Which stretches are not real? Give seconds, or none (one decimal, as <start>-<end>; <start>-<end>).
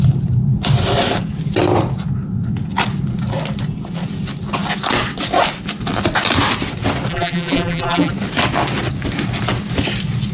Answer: 7.1-8.1